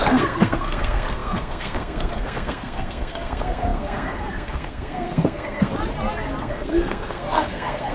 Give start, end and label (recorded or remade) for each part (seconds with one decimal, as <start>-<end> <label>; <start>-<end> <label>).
0.0-5.7 remade; 5.7-6.4 recorded; 6.4-7.9 remade